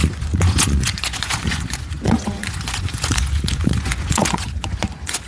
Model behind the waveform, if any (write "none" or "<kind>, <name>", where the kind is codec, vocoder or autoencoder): vocoder, Vocos